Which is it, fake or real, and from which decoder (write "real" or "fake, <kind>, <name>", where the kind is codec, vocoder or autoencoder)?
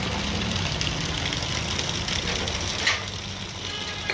real